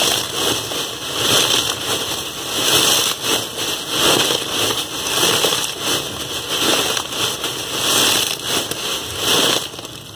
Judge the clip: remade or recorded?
recorded